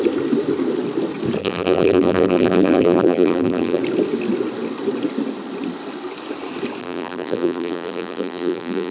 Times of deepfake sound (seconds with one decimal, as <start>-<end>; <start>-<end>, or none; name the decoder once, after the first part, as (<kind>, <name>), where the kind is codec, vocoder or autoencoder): 1.4-3.8 (vocoder, BigVGAN v2); 6.8-8.9